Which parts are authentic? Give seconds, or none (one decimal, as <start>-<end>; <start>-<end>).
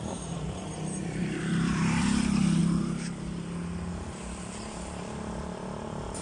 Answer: 2.6-3.9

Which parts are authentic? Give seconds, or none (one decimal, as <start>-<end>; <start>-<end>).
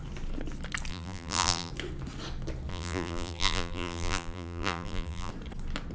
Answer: 0.0-0.9; 1.7-2.7; 5.3-5.9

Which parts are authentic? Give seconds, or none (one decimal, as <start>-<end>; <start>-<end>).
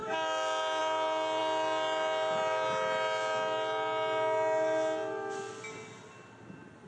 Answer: 0.0-6.9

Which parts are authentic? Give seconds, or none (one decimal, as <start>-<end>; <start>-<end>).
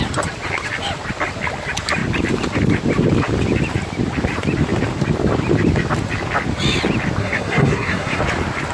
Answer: 0.0-7.2; 8.2-8.7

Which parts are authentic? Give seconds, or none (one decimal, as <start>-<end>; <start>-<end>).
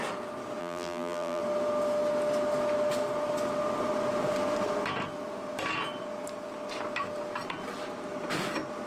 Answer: 0.0-0.6; 1.4-8.9